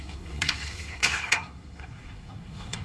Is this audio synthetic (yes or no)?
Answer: yes